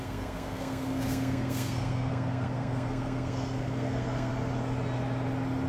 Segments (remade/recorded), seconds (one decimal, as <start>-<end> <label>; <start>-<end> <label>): 0.0-4.3 remade; 4.3-5.7 recorded

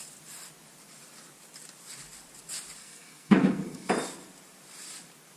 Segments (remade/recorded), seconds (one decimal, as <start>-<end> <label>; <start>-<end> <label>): 0.0-2.8 recorded; 2.8-3.9 remade; 3.9-5.4 recorded

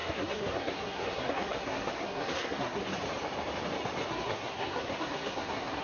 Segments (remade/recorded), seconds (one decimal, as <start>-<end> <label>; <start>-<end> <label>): 0.0-2.8 remade; 2.8-4.1 recorded; 4.1-5.8 remade

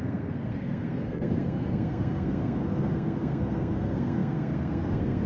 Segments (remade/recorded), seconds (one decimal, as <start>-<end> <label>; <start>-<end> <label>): 0.0-5.3 remade

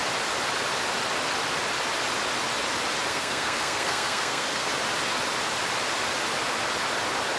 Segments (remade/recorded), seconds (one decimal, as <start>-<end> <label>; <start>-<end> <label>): 0.0-3.1 recorded; 3.1-4.7 remade; 4.7-7.4 recorded

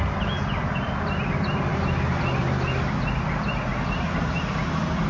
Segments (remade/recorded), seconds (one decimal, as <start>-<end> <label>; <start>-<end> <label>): 0.0-5.1 recorded

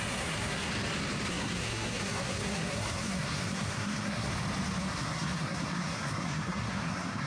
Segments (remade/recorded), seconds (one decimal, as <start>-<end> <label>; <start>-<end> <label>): 0.0-0.7 remade; 0.7-1.3 recorded; 1.3-4.3 remade; 4.3-4.8 recorded; 4.8-7.3 remade

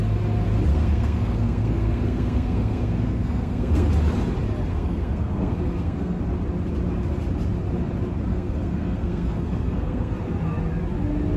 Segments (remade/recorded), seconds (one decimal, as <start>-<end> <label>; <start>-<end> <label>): 0.0-0.7 recorded; 0.7-3.9 remade; 3.9-4.7 recorded; 4.7-6.2 remade; 6.2-8.3 recorded; 8.3-10.1 remade; 10.1-11.4 recorded